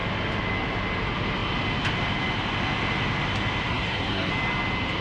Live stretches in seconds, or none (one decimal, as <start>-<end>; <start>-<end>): 0.0-3.7; 4.3-5.0